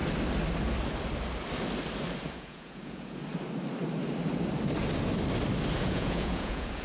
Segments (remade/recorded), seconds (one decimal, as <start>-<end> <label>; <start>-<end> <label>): 0.0-2.3 recorded; 2.3-3.2 remade; 3.2-5.8 recorded; 5.8-6.8 remade